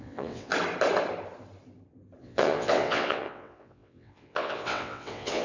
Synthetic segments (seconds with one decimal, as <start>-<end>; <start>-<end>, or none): 0.0-0.5; 2.2-5.4